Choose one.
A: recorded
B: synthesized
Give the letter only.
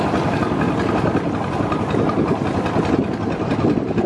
A